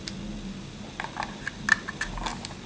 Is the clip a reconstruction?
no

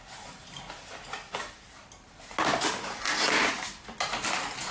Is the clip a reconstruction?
no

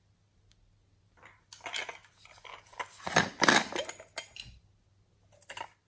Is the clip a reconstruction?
no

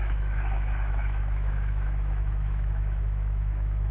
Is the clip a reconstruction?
yes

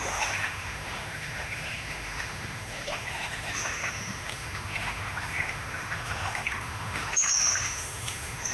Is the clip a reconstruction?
yes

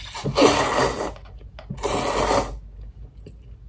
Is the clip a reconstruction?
no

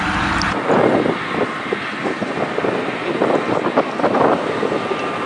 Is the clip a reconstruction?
no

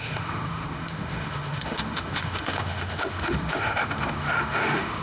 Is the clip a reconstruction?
yes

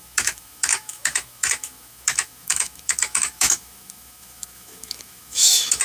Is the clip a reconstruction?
yes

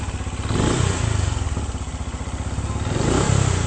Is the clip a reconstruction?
no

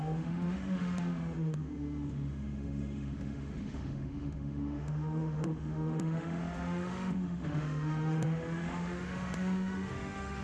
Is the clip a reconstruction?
yes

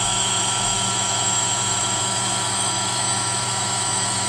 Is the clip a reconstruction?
yes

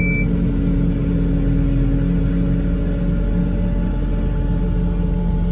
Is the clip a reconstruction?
no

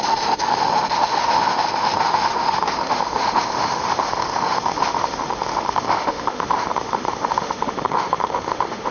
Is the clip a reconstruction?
yes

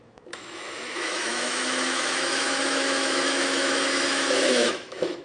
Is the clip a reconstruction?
yes